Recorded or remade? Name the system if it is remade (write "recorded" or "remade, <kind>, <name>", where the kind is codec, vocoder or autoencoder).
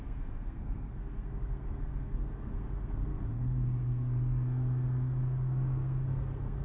remade, codec, SNAC